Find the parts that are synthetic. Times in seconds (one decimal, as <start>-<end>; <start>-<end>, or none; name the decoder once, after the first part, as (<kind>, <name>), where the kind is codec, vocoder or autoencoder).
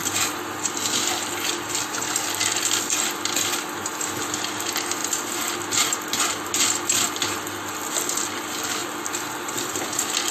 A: none